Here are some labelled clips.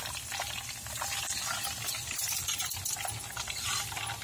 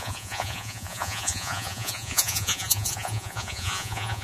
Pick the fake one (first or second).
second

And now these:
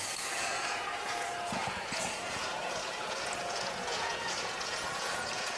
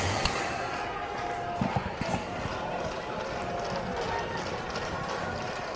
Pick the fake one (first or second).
first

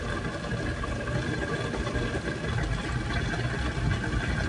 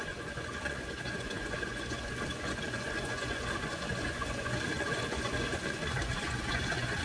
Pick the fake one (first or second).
second